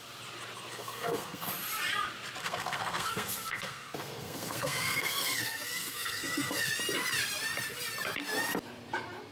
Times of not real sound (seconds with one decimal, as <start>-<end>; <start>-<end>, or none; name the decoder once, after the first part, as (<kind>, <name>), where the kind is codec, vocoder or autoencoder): 0.7-1.5 (codec, SNAC); 2.4-6.7